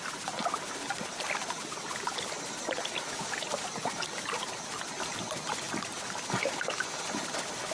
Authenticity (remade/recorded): recorded